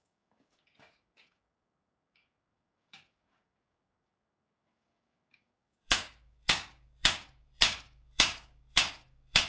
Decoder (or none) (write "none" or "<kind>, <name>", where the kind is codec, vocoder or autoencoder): codec, DAC